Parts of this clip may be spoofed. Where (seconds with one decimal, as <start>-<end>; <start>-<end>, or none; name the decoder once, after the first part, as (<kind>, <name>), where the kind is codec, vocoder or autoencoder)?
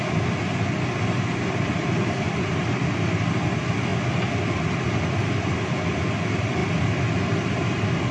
none